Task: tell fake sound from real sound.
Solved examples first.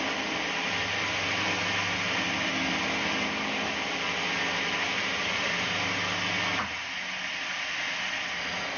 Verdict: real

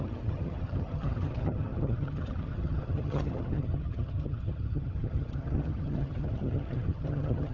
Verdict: fake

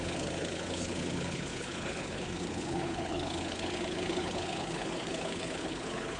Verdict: fake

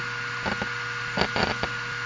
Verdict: real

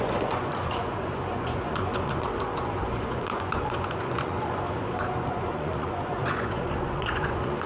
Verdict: fake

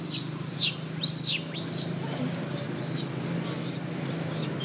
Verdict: real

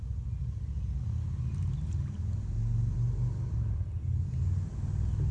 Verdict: real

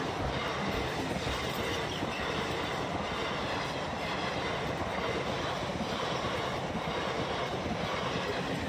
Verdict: real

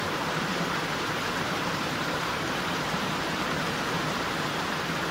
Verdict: fake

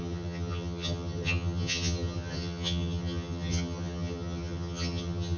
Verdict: fake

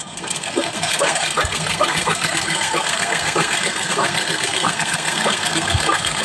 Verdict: fake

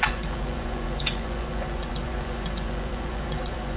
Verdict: fake